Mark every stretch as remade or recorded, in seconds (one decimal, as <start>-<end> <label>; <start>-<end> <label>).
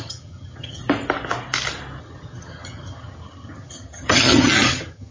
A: 0.0-0.8 remade; 0.8-2.0 recorded; 2.0-5.1 remade